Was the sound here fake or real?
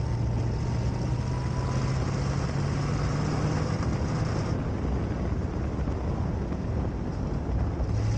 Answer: real